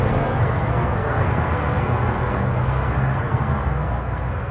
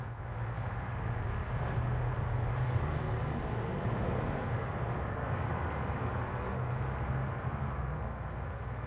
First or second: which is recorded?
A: second